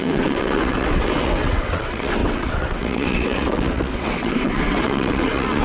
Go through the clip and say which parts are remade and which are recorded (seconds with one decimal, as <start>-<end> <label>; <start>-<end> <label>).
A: 0.0-5.6 remade